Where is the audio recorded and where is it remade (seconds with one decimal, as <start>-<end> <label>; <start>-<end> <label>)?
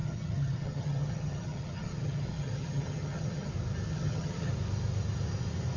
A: 0.0-3.5 remade; 3.5-3.9 recorded; 3.9-4.5 remade; 4.5-5.8 recorded